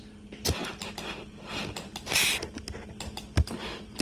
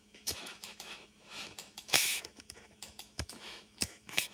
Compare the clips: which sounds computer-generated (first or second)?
second